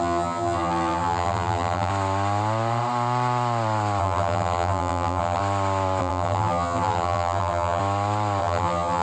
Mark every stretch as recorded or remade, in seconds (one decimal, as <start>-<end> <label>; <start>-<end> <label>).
0.0-1.9 remade; 1.9-4.0 recorded; 4.0-5.4 remade; 5.4-6.0 recorded; 6.0-7.8 remade; 7.8-8.4 recorded; 8.4-9.0 remade